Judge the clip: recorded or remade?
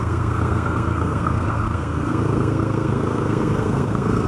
remade